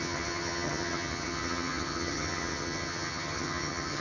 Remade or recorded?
remade